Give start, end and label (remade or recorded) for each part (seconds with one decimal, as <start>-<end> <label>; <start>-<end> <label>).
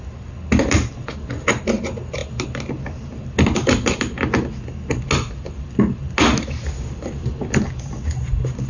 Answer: 0.0-8.7 recorded